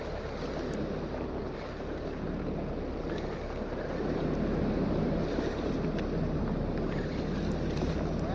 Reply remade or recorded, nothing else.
recorded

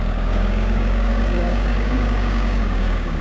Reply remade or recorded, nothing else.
remade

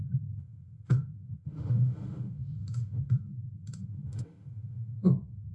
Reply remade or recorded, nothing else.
remade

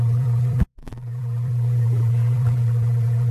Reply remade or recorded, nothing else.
remade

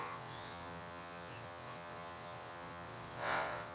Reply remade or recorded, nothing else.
remade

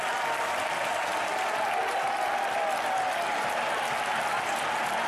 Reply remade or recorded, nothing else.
recorded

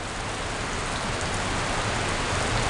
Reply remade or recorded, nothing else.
recorded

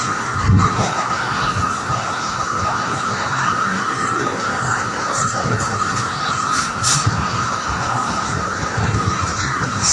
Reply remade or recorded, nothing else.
remade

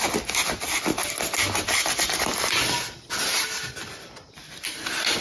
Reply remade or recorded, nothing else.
recorded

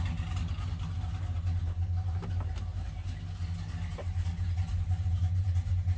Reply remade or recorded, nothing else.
recorded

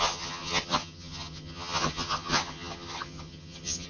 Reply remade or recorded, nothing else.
remade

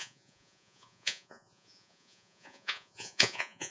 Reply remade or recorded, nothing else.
remade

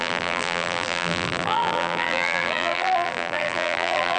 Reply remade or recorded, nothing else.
remade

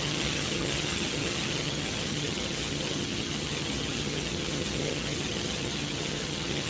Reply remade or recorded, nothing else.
remade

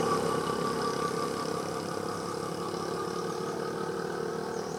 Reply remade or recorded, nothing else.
recorded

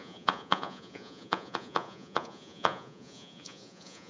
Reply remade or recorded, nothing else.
remade